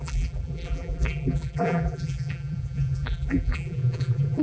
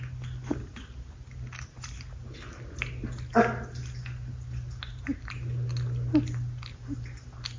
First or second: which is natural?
second